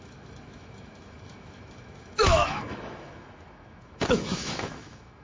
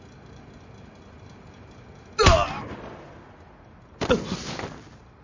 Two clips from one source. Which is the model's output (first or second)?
first